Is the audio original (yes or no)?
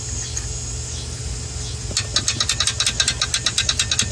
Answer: yes